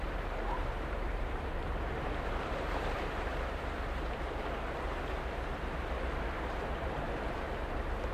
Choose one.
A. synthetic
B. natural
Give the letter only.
A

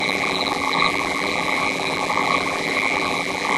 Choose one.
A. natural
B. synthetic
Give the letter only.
B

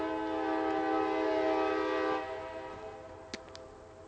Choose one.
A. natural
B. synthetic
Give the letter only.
A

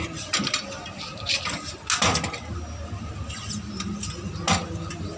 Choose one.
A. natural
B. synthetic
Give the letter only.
A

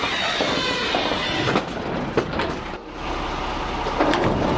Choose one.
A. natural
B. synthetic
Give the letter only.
A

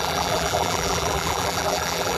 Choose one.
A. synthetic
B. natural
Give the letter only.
A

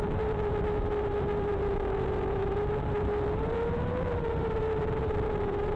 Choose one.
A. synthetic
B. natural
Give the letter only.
A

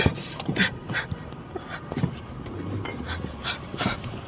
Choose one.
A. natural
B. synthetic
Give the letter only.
B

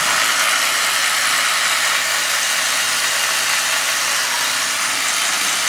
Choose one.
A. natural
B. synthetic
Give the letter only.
A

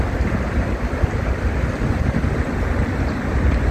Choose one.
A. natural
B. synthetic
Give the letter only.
A